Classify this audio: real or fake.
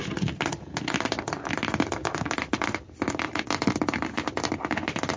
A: real